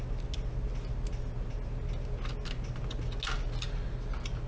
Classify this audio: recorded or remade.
recorded